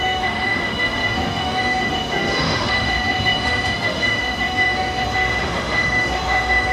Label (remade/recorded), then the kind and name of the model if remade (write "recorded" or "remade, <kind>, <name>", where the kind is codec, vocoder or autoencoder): remade, autoencoder, DAC-VAE